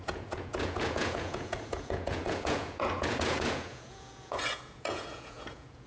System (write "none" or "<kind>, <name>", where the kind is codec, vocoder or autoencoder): vocoder, Vocos